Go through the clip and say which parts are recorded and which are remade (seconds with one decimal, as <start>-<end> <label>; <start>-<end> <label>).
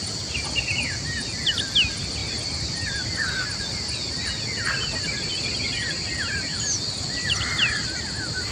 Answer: 0.0-8.5 recorded